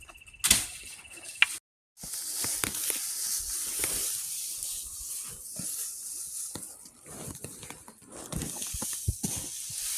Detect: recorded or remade recorded